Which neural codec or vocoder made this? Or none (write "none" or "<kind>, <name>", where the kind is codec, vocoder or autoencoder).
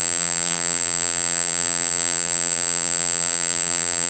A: vocoder, BigVGAN v2